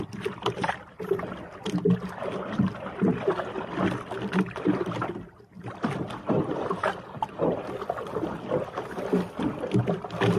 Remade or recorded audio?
recorded